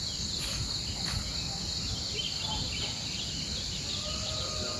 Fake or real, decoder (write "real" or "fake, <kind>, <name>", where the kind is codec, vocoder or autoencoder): real